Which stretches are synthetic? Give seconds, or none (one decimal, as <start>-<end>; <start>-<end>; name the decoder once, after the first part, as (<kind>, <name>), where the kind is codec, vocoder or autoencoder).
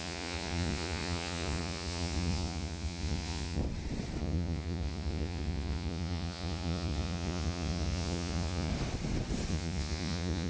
0.0-3.6 (vocoder, Vocos); 4.2-8.7; 9.5-10.5